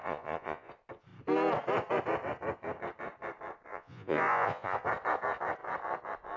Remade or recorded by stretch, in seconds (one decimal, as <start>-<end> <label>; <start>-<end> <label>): 0.0-0.7 remade; 0.7-3.7 recorded; 3.7-4.8 remade; 4.8-6.4 recorded

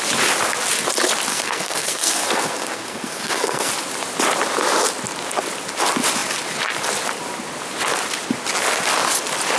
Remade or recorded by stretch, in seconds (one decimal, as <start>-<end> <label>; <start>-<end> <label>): 0.0-1.3 recorded; 1.3-3.7 remade; 3.7-9.6 recorded

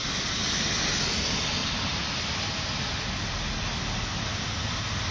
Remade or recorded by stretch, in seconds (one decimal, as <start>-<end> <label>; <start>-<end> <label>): 0.0-5.1 recorded

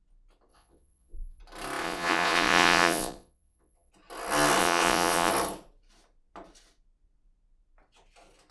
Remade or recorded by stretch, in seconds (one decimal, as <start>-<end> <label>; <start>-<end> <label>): 0.0-0.5 recorded; 0.5-1.4 remade; 1.4-1.8 recorded; 1.8-3.9 remade; 3.9-4.6 recorded; 4.6-5.3 remade; 5.3-8.5 recorded

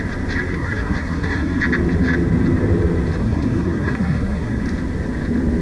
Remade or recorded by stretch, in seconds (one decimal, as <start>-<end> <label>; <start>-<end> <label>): 0.0-0.5 recorded; 0.5-1.6 remade; 1.6-3.2 recorded; 3.2-4.6 remade; 4.6-5.6 recorded